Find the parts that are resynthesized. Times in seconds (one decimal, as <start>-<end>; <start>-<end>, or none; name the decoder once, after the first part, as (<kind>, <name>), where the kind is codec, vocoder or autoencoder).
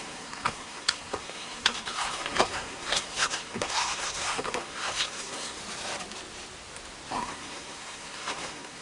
0.0-5.6 (codec, SNAC); 7.1-8.8